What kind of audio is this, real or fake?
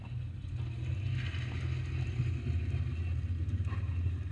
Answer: real